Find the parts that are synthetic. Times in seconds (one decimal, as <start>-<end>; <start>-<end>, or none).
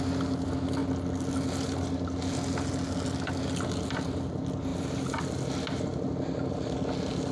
none